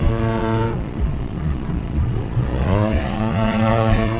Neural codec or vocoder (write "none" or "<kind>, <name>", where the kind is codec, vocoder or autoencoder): vocoder, Vocos